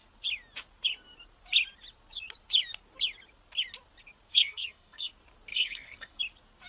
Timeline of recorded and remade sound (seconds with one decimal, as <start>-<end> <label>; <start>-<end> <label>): 0.0-4.3 recorded; 4.3-5.1 remade; 5.1-5.5 recorded; 5.5-6.2 remade; 6.2-6.7 recorded